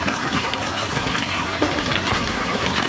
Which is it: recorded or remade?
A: remade